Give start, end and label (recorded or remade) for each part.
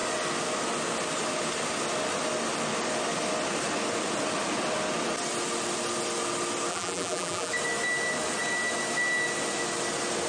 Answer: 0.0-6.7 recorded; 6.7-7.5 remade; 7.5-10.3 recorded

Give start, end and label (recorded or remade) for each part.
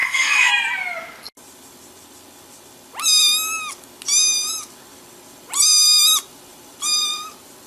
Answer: 0.0-0.5 remade; 0.5-7.7 recorded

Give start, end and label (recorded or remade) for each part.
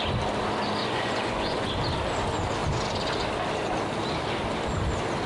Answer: 0.0-0.8 recorded; 0.8-1.7 remade; 1.7-5.3 recorded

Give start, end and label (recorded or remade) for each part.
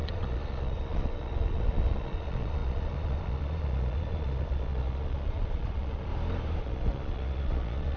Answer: 0.0-6.1 remade; 6.1-6.6 recorded; 6.6-8.0 remade